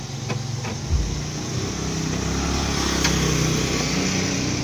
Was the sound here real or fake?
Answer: real